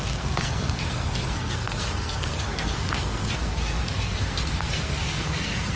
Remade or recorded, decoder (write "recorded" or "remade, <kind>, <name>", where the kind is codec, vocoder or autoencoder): remade, codec, SNAC